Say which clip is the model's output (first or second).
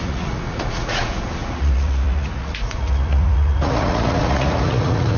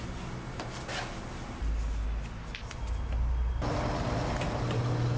first